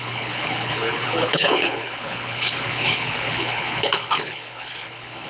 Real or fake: fake